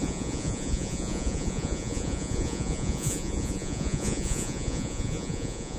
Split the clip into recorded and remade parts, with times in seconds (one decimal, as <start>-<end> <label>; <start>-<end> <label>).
0.0-5.8 remade